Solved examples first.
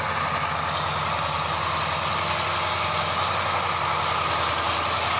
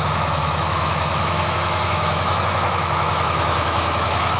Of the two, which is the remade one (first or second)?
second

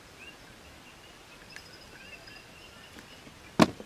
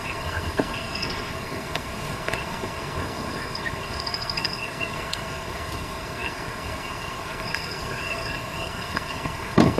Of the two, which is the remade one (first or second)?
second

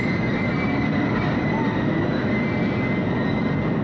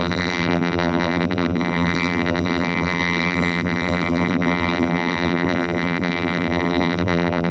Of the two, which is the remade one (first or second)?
second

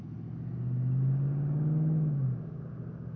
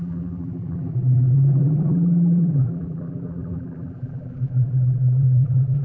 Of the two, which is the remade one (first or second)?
second